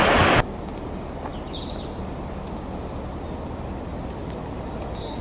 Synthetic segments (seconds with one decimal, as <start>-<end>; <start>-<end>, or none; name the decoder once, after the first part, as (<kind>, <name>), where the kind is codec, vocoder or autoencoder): none